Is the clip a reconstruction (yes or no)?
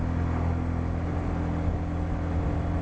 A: no